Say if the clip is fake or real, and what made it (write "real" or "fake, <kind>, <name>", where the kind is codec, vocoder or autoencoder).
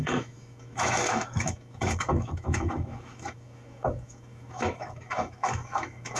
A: fake, autoencoder, DAC-VAE